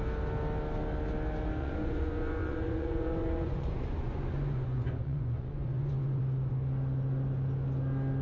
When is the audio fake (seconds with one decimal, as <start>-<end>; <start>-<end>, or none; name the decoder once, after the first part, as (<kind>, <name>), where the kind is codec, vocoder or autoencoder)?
1.6-6.2 (vocoder, Vocos)